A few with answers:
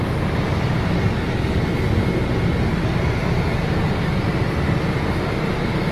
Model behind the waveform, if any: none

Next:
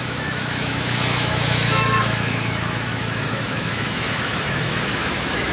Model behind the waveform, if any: autoencoder, DAC-VAE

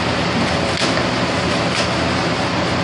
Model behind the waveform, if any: none